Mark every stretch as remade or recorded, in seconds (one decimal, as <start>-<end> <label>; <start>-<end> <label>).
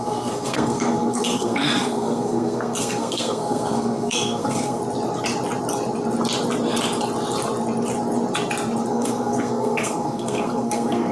0.0-4.8 remade; 4.8-8.9 recorded; 8.9-11.1 remade